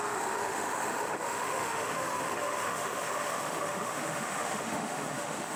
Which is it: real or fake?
fake